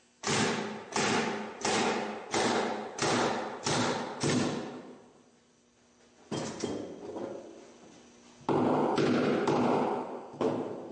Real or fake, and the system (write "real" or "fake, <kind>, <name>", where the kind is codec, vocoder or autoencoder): real